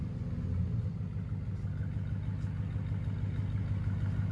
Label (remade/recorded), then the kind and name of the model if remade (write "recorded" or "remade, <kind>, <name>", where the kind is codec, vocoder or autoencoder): recorded